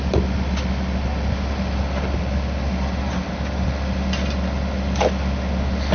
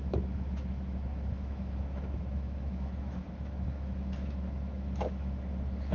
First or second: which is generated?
second